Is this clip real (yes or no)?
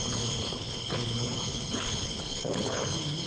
no